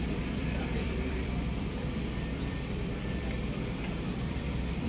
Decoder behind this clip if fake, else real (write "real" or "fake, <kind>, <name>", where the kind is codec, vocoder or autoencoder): fake, vocoder, BigVGAN v2